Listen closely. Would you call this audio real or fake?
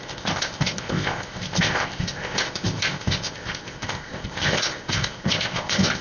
fake